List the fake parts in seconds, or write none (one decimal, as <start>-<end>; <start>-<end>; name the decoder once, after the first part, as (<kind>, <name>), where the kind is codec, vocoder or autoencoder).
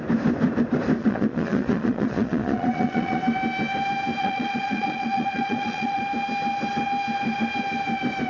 1.0-3.2 (vocoder, Vocos); 4.2-6.0